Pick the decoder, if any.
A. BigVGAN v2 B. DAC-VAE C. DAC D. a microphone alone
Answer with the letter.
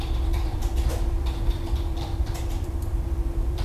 A